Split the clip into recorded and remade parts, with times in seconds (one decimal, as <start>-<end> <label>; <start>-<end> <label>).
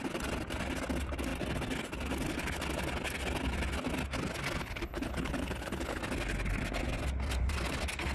0.0-4.6 recorded; 4.6-6.0 remade; 6.0-8.1 recorded